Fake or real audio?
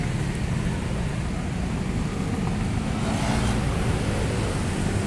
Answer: real